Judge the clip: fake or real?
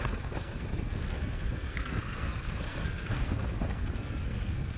fake